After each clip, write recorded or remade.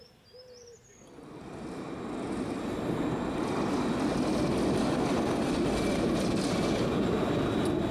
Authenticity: recorded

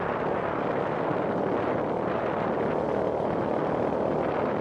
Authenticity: recorded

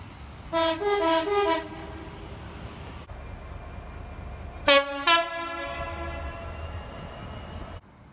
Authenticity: recorded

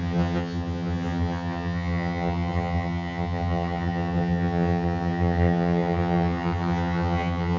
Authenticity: remade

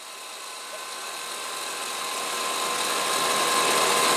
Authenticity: recorded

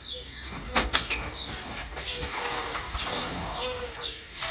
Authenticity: remade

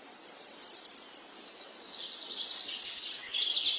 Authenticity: recorded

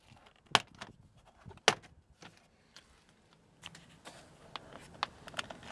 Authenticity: recorded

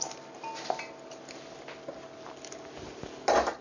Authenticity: recorded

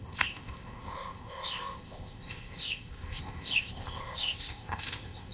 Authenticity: remade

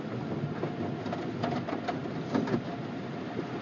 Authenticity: recorded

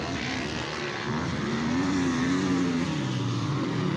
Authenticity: recorded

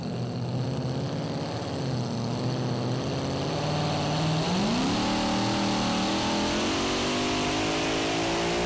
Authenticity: recorded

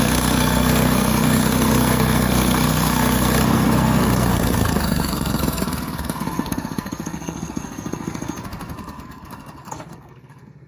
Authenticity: remade